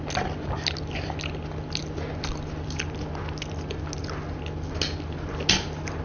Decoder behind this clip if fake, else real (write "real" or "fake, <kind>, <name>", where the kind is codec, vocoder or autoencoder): real